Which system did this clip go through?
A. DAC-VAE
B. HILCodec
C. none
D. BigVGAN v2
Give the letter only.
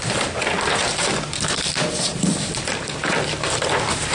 C